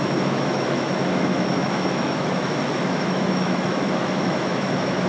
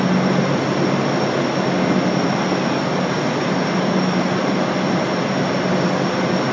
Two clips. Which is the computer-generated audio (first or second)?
first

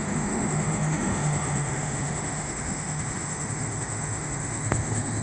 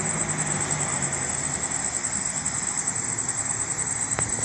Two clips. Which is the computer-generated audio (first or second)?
first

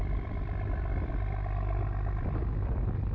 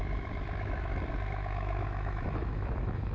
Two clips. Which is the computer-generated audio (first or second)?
second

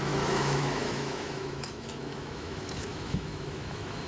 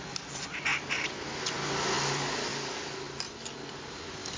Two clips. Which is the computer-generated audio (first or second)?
first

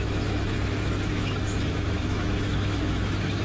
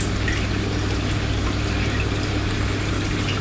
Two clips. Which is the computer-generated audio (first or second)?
first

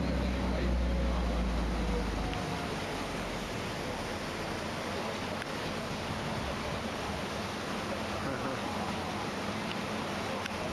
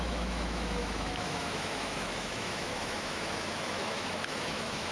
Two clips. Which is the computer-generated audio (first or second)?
second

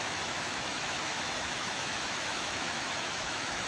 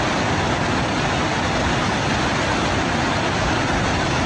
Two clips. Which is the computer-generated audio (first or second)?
first